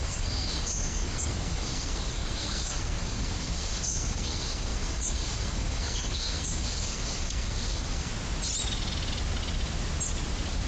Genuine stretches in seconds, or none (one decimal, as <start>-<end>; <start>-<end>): 8.1-10.7